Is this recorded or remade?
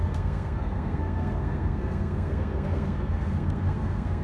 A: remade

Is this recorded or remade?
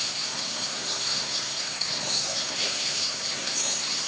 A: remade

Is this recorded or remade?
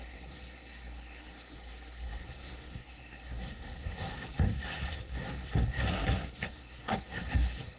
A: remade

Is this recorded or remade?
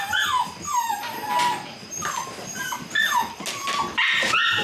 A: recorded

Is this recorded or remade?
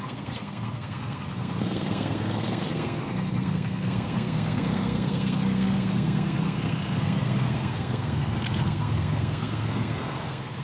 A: remade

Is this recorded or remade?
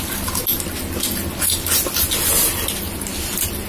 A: recorded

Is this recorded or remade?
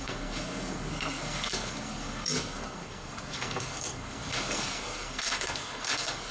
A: remade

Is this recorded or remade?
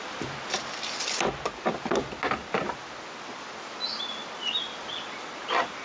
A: recorded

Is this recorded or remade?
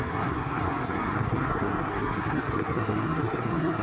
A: remade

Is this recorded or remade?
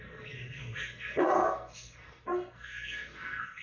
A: remade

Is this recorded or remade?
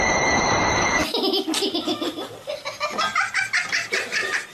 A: recorded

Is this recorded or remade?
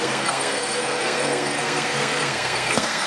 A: remade